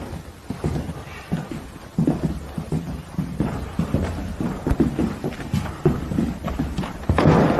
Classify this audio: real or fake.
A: real